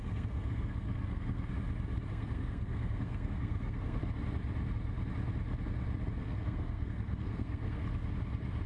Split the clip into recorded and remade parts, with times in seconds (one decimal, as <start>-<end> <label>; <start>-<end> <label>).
0.0-1.5 remade; 1.5-2.1 recorded; 2.1-4.0 remade; 4.0-6.2 recorded; 6.2-7.8 remade; 7.8-8.7 recorded